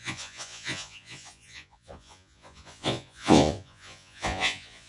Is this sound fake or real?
fake